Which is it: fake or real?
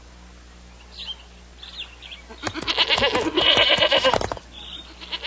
real